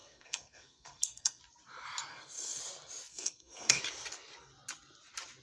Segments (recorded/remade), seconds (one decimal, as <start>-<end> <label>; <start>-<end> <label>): 0.0-1.4 remade; 1.4-2.1 recorded; 2.1-2.6 remade; 2.6-3.1 recorded; 3.1-3.8 remade; 3.8-5.4 recorded